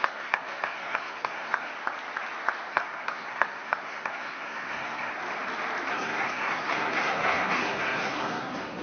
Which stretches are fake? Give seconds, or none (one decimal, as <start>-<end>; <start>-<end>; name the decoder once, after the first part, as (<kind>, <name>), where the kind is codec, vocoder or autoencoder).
0.0-1.7 (codec, SNAC); 2.7-5.1; 5.9-8.8